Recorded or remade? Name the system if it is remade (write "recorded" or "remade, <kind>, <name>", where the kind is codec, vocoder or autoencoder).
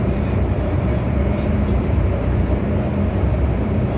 remade, vocoder, BigVGAN v2